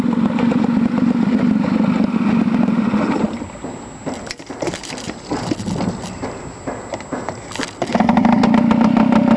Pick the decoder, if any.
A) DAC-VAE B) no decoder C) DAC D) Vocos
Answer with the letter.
B